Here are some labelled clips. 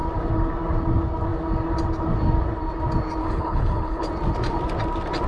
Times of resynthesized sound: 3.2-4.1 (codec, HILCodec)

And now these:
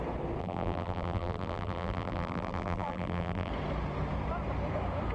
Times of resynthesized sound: 0.4-3.5 (vocoder, BigVGAN v2)